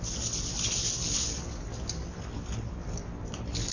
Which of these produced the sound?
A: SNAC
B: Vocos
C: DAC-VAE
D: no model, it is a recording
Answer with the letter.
D